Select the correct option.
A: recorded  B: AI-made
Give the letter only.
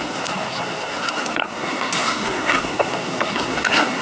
B